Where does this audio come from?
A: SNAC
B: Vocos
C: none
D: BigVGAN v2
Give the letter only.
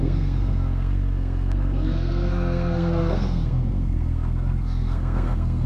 A